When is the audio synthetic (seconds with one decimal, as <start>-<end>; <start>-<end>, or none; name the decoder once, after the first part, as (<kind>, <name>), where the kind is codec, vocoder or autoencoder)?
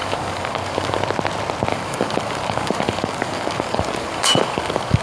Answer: 0.0-1.0 (codec, DAC); 1.7-5.0